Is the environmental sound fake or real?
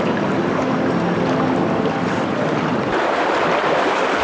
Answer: real